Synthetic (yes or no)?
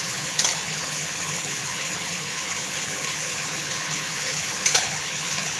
yes